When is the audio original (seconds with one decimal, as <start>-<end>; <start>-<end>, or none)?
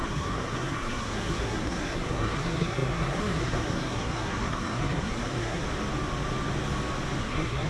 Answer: 5.6-7.2